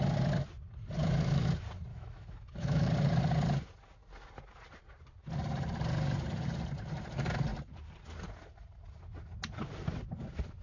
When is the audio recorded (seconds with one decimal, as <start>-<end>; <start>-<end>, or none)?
0.0-1.0; 1.5-1.9; 2.9-10.6